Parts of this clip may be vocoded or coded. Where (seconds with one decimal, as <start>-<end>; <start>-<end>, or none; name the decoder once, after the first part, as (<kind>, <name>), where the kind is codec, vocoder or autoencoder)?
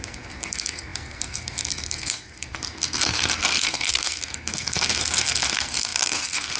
0.0-6.6 (codec, SNAC)